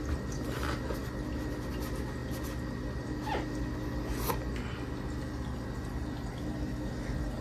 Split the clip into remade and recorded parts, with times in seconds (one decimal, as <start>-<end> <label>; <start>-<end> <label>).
0.0-7.4 recorded